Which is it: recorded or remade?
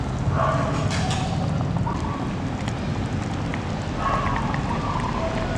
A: recorded